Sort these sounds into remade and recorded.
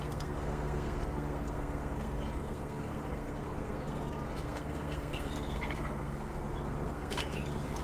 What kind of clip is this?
remade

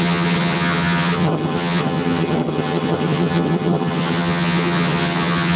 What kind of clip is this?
remade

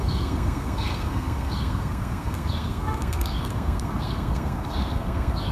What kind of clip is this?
remade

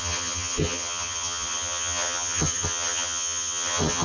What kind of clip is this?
remade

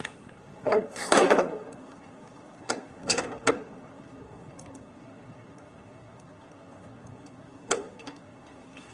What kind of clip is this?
remade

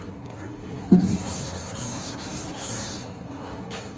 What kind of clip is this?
remade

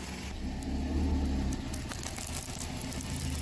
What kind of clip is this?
recorded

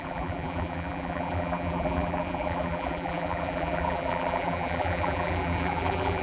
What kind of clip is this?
remade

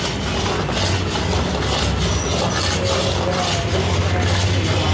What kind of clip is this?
recorded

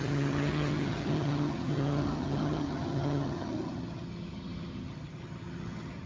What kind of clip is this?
remade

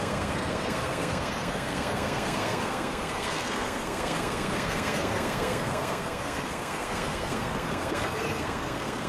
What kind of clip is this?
remade